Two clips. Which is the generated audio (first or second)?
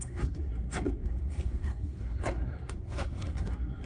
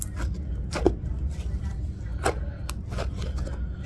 first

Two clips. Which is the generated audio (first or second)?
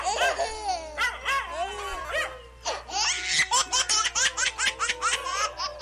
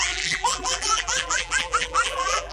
second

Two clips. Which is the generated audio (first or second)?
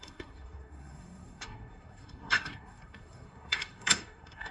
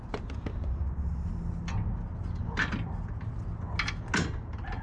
first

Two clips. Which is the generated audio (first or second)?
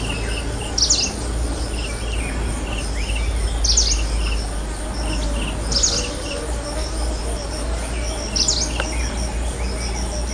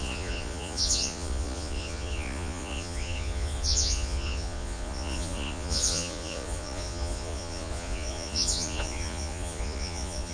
second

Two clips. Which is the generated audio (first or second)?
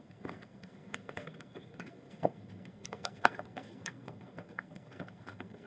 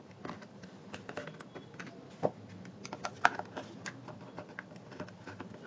first